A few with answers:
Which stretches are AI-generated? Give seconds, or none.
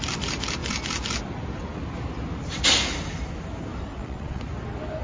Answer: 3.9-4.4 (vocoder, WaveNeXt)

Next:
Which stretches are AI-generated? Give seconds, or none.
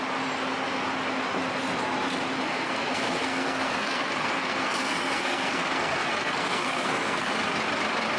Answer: 2.5-7.3 (codec, SNAC)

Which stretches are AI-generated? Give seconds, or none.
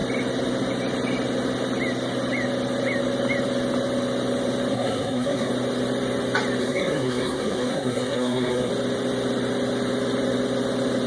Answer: 4.7-5.5 (codec, SNAC); 6.6-8.7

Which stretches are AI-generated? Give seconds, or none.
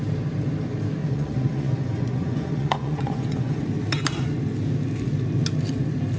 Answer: 1.0-3.6 (vocoder, Vocos)